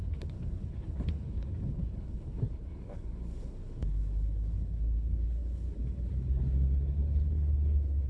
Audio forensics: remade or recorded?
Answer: remade